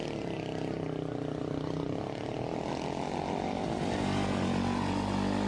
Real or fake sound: real